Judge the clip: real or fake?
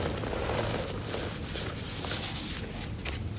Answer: real